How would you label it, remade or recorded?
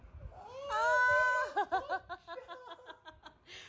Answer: recorded